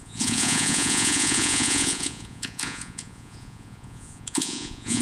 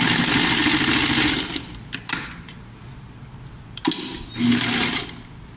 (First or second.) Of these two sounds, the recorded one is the second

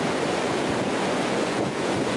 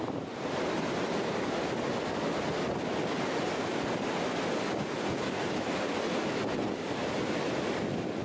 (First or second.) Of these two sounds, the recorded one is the second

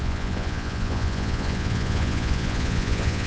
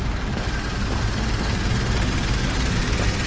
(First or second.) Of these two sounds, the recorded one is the second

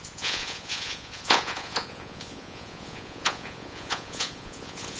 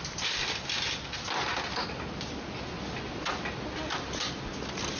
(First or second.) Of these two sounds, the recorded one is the second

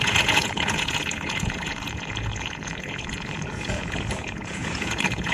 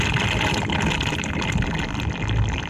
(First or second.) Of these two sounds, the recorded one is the second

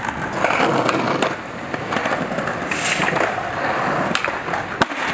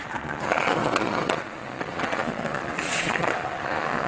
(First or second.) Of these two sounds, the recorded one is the first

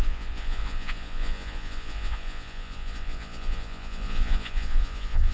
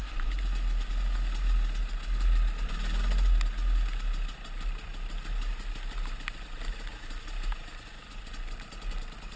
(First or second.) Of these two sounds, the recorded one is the second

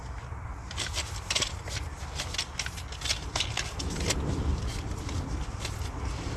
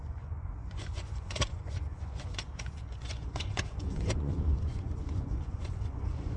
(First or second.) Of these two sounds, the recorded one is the first